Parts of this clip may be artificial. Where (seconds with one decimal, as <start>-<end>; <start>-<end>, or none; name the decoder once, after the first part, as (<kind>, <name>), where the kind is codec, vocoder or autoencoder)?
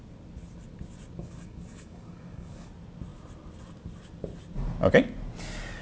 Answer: 1.2-2.7 (codec, DAC)